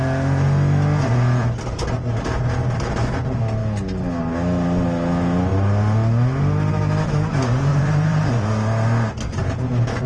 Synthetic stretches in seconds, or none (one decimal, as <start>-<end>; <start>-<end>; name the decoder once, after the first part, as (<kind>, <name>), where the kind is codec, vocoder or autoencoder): 7.7-8.3 (vocoder, BigVGAN v2)